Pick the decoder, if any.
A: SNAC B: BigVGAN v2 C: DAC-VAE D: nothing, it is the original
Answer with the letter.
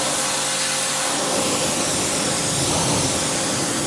D